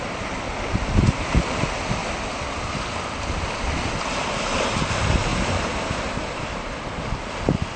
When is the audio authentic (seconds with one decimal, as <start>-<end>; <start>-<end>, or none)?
0.0-2.0; 3.9-5.3; 6.5-7.8